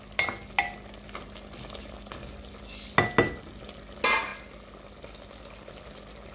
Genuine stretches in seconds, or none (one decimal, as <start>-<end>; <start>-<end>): 0.0-6.3